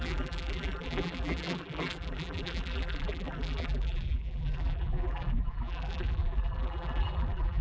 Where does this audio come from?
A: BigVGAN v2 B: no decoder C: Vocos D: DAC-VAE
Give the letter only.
A